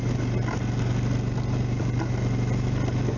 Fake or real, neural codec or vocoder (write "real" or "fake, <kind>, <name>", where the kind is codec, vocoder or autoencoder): real